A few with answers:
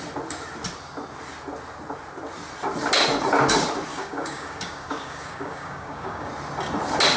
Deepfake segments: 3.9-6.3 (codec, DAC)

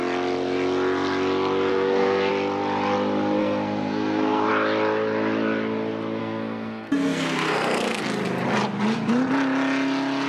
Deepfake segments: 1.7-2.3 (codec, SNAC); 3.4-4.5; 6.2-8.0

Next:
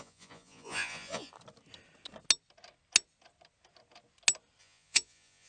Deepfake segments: 0.0-1.3 (vocoder, Vocos); 4.6-5.5